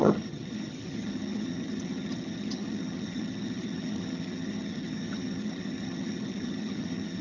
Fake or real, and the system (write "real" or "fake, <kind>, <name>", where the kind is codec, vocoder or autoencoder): fake, vocoder, HiFi-GAN